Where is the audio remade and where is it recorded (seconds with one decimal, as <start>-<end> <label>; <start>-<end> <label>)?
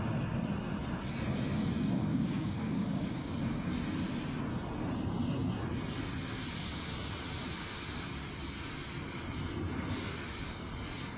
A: 0.0-2.1 recorded; 2.1-3.3 remade; 3.3-11.2 recorded